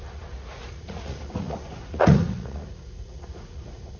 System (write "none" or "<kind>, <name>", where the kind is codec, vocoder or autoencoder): vocoder, Vocos